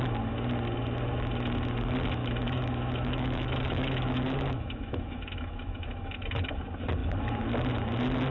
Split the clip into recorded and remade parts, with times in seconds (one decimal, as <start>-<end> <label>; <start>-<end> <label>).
0.0-2.2 recorded; 2.2-6.5 remade; 6.5-8.3 recorded